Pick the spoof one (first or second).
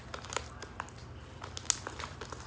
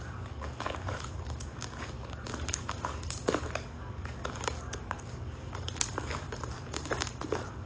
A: second